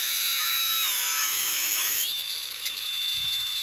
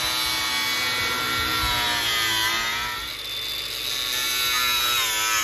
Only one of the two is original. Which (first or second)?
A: second